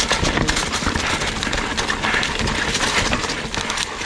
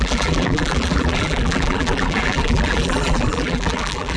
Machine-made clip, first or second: second